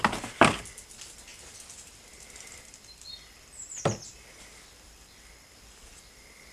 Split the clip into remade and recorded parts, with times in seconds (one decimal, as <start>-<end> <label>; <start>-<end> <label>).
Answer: 0.0-1.3 recorded; 1.3-5.2 remade; 5.2-6.5 recorded